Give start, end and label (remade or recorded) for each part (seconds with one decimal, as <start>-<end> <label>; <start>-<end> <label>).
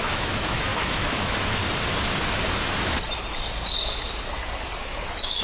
0.0-1.6 remade; 1.6-4.8 recorded; 4.8-5.4 remade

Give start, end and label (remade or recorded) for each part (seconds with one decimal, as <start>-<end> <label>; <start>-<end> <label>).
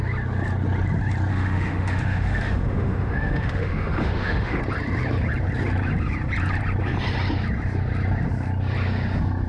0.0-1.3 recorded; 1.3-4.6 remade; 4.6-9.5 recorded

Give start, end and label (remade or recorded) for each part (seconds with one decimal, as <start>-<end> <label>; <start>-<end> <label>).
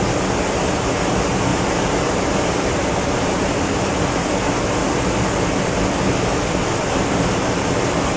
0.0-1.5 recorded; 1.5-3.6 remade; 3.6-6.6 recorded; 6.6-8.2 remade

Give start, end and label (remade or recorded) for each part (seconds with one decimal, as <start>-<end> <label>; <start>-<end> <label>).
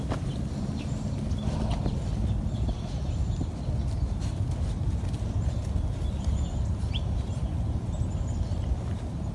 0.0-9.3 recorded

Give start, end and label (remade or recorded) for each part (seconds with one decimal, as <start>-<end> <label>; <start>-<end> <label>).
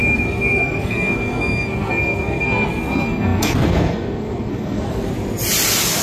0.0-5.1 remade; 5.1-6.0 recorded